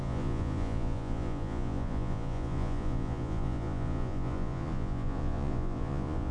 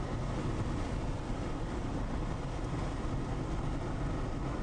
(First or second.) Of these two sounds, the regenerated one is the first